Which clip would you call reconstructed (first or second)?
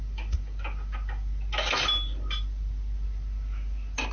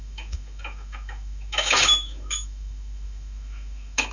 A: second